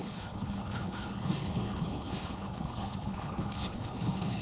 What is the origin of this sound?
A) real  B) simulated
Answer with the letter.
B